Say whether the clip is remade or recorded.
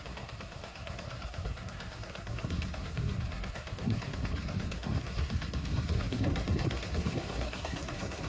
remade